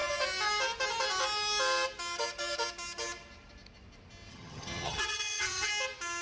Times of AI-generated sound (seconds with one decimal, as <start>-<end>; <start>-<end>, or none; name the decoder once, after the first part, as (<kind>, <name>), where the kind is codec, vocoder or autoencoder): 4.3-5.7 (vocoder, HiFi-GAN)